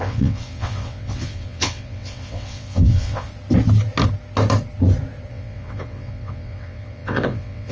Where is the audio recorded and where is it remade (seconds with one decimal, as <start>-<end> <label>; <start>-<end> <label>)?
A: 0.0-3.3 remade; 3.3-5.3 recorded; 5.3-7.7 remade